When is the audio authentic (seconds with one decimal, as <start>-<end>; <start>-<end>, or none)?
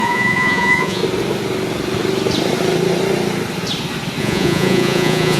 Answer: 1.0-4.2